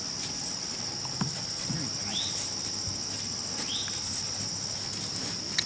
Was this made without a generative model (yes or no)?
yes